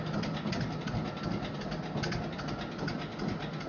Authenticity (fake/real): real